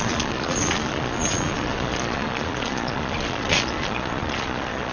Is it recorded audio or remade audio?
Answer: remade